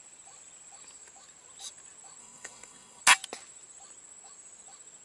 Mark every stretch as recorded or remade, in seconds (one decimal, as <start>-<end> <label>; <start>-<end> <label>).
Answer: 0.0-2.2 recorded; 2.2-3.0 remade; 3.0-5.0 recorded